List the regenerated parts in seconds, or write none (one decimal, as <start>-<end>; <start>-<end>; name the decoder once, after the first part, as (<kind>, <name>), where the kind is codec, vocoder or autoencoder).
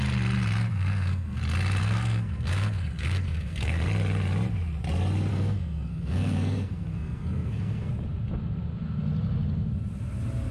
0.7-1.4 (codec, SNAC); 1.8-3.9; 5.3-7.9